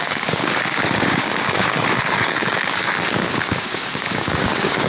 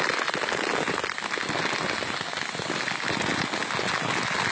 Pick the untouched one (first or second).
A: second